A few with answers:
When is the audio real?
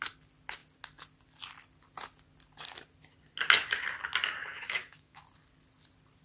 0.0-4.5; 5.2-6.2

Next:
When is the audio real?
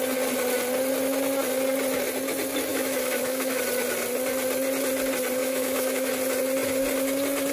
0.0-2.7; 3.6-5.4; 6.1-7.5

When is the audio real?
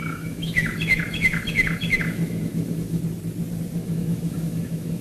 3.0-3.8